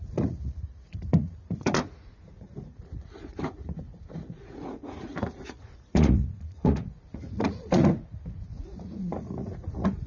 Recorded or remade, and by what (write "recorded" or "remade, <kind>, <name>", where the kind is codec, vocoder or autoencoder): remade, vocoder, Vocos